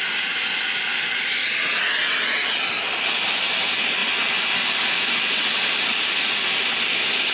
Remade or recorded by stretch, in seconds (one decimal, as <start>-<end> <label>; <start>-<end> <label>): 0.0-7.3 recorded